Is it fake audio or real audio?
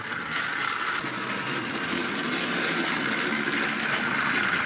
real